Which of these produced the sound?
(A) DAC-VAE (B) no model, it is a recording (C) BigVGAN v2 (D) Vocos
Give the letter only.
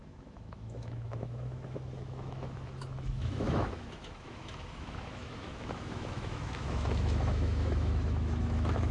A